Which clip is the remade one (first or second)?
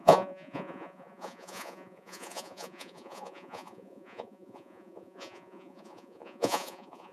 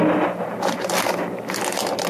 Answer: first